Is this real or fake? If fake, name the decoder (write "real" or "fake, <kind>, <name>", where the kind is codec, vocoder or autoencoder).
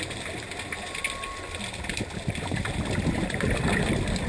real